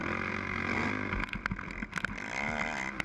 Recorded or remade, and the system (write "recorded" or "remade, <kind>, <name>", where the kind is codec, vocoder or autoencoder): recorded